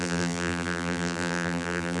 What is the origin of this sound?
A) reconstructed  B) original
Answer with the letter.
A